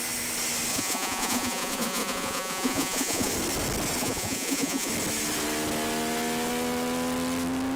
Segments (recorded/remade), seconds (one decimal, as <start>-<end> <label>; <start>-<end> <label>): 0.0-0.7 recorded; 0.7-3.3 remade; 3.3-4.0 recorded; 4.0-4.9 remade; 4.9-7.8 recorded